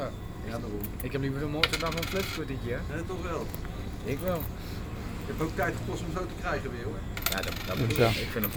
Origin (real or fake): real